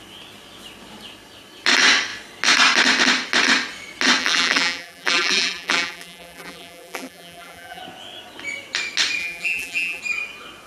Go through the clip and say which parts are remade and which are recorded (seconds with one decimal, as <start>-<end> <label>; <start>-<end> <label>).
0.0-4.2 recorded; 4.2-7.8 remade; 7.8-9.2 recorded; 9.2-10.0 remade; 10.0-10.7 recorded